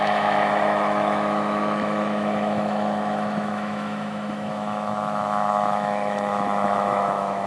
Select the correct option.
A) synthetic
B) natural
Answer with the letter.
A